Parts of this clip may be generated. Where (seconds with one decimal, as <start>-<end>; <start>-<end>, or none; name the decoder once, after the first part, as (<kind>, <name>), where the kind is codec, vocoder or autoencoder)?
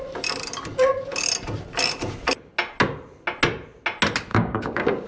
4.3-5.1 (codec, DAC)